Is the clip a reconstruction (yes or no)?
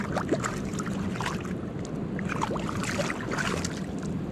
no